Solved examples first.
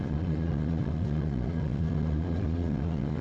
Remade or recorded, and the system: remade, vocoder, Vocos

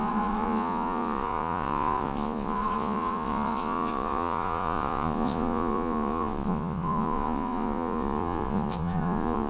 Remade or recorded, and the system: remade, vocoder, Vocos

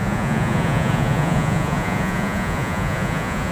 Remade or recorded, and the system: remade, vocoder, Vocos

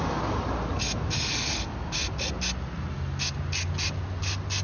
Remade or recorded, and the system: recorded